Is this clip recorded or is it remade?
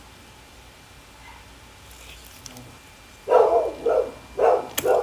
recorded